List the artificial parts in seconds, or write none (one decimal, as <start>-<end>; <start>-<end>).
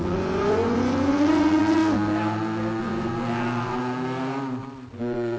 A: 0.0-1.8; 2.8-3.8; 5.0-5.4